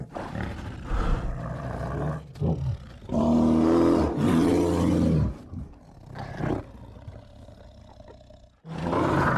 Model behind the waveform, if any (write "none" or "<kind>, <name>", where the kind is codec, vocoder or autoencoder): none